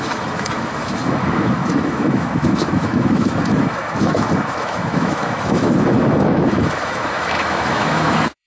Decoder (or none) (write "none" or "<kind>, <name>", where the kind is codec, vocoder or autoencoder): autoencoder, DAC-VAE